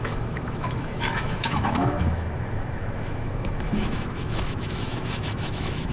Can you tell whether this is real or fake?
fake